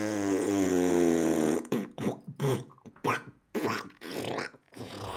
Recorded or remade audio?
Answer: remade